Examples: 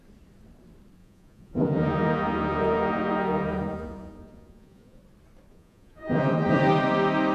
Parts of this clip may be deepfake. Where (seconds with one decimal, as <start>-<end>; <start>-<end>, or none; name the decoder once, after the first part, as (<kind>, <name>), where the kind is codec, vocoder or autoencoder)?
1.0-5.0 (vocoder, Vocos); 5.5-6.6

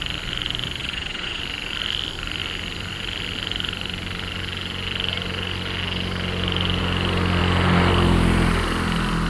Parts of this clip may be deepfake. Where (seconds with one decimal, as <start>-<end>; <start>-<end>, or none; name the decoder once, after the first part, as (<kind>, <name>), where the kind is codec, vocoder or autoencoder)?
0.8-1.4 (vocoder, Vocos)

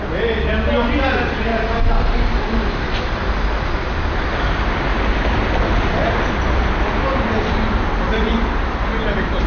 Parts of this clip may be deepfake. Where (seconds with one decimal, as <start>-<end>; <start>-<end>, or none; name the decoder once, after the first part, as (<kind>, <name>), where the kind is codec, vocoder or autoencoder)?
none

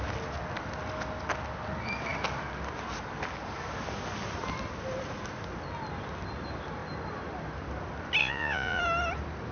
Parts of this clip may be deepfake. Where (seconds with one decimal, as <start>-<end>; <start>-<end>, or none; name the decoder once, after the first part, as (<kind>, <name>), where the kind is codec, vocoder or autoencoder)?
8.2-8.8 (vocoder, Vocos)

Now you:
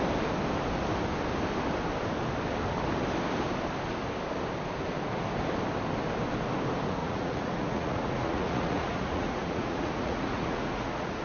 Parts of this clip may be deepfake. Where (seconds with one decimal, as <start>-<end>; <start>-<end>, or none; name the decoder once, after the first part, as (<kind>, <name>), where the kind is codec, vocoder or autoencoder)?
7.0-11.2 (vocoder, Vocos)

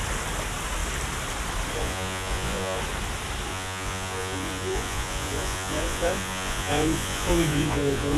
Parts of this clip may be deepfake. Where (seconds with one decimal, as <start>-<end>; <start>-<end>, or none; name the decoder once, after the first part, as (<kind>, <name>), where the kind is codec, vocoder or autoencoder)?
1.8-2.8 (vocoder, Vocos); 3.5-8.2